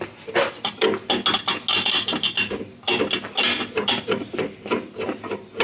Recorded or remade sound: recorded